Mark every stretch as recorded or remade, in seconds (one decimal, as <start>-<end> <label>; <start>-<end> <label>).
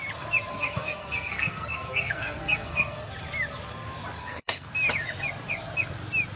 0.0-0.5 recorded; 0.5-3.1 remade; 3.1-4.2 recorded; 4.2-4.7 remade; 4.7-6.4 recorded